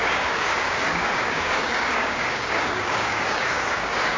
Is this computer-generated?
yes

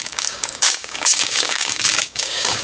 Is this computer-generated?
yes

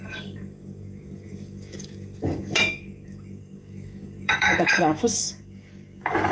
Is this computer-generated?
yes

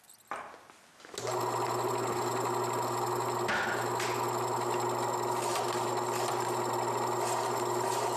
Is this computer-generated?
no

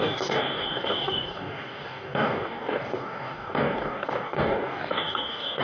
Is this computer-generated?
yes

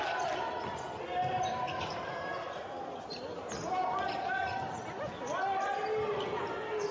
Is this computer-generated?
no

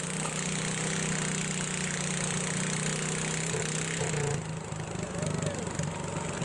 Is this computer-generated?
no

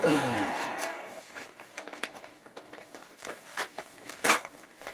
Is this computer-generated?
yes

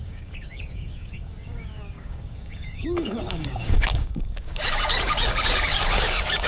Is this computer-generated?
yes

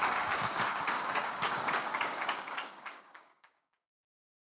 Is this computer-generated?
yes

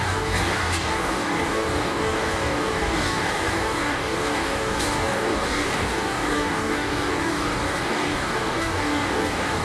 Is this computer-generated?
yes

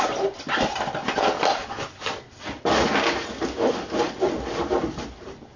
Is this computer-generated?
no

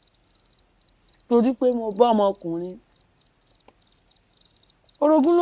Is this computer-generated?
no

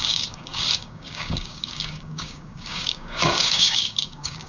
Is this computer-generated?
yes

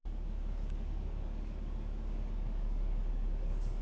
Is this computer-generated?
yes